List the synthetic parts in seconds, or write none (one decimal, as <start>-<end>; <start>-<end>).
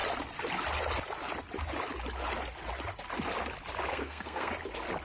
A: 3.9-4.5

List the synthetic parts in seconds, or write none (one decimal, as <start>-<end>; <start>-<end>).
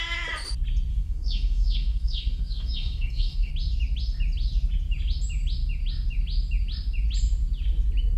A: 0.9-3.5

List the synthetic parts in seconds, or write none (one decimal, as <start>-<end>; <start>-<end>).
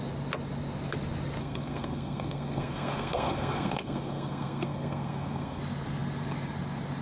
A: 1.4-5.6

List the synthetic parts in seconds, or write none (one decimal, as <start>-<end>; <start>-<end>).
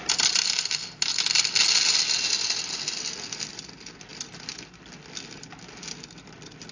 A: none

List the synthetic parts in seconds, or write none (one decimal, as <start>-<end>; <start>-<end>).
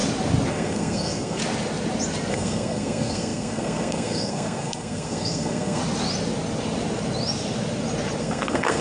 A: 0.5-1.4; 2.3-5.8; 8.2-8.8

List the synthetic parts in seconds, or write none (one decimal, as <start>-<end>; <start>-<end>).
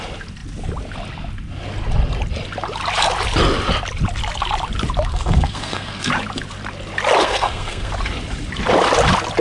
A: 5.1-6.1; 7.2-7.9